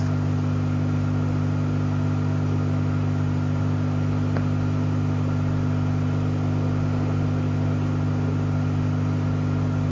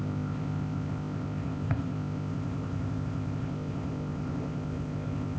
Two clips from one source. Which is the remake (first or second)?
second